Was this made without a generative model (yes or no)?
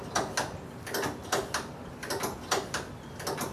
yes